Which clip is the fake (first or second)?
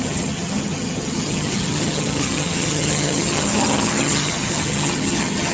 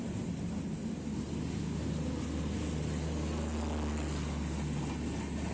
first